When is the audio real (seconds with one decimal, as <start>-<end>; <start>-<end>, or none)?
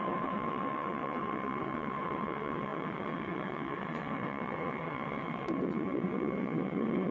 none